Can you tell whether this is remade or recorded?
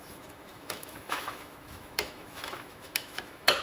remade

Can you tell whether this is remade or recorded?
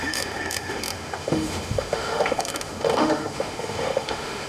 remade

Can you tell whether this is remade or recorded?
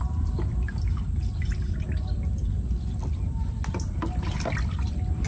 recorded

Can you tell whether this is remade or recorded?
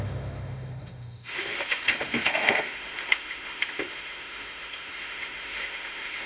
remade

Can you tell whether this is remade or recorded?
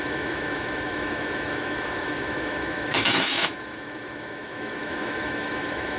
remade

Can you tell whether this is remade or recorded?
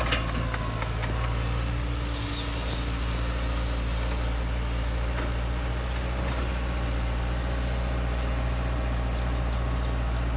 recorded